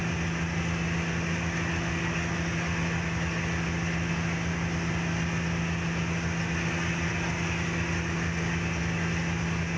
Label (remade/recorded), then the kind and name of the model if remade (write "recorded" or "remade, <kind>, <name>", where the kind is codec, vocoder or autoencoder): recorded